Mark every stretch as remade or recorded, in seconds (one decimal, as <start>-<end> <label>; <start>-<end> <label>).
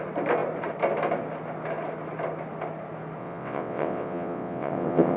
0.0-3.2 recorded; 3.2-5.2 remade